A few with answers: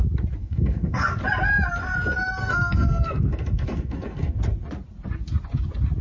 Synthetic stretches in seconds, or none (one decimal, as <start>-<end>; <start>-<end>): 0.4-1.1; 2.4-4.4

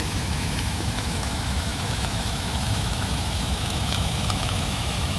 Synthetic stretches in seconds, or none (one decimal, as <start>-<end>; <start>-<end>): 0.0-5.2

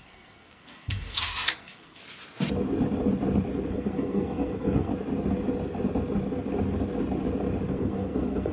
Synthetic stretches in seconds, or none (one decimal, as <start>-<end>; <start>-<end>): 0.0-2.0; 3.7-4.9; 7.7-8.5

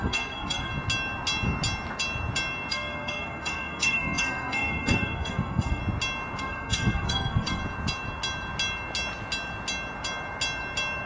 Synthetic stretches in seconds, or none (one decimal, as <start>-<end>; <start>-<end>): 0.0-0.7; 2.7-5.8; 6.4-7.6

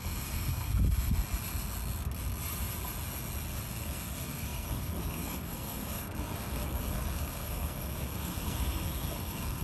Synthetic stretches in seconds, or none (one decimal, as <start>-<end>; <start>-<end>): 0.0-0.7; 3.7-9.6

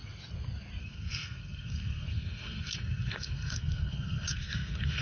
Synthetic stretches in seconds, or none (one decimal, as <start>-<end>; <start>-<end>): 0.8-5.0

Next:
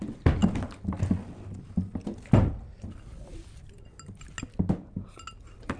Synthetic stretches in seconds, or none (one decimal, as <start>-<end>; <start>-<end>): none

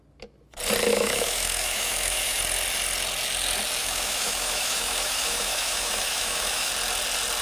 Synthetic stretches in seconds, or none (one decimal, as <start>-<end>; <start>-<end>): 0.9-2.4; 3.8-6.7